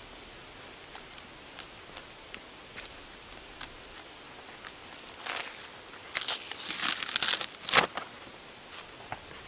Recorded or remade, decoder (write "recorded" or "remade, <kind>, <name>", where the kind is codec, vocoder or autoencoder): recorded